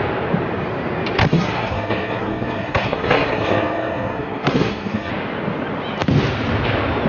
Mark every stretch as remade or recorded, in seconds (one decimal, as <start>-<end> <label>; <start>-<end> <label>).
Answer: 0.0-1.2 recorded; 1.2-5.1 remade; 5.1-7.1 recorded